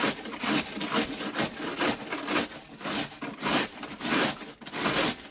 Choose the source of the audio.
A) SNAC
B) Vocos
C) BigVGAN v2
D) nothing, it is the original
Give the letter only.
D